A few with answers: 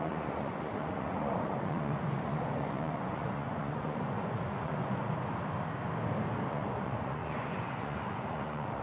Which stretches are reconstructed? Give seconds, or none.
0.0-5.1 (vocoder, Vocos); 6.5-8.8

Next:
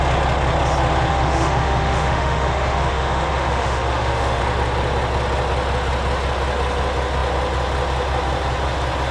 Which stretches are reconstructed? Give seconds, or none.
1.1-4.4 (autoencoder, DAC-VAE)

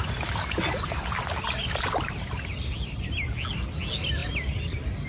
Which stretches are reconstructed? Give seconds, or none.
none

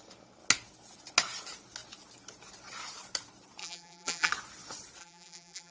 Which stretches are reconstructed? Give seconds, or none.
3.6-4.3 (vocoder, BigVGAN v2); 5.0-5.7

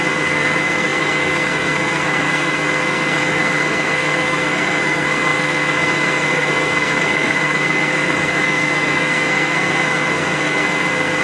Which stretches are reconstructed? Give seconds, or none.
0.0-11.2 (codec, SNAC)

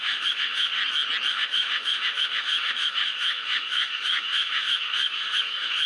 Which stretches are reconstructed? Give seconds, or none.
0.0-0.8 (autoencoder, DAC-VAE); 1.3-5.9